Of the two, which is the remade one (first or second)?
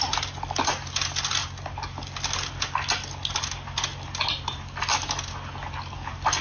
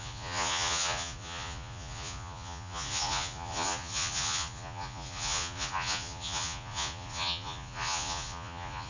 second